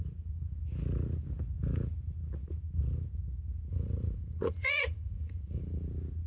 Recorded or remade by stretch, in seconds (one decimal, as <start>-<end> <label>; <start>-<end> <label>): 0.0-3.7 recorded; 3.7-5.6 remade; 5.6-6.3 recorded